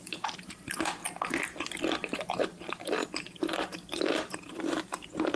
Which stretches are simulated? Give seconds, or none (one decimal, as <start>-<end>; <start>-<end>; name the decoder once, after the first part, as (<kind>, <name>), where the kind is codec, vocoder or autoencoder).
0.0-1.0 (vocoder, BigVGAN v2); 2.4-5.4